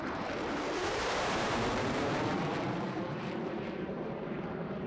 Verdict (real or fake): fake